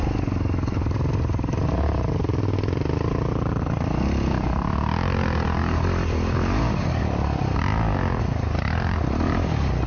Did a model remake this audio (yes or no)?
no